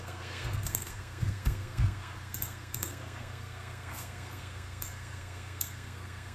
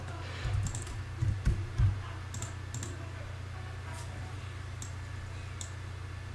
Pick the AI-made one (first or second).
first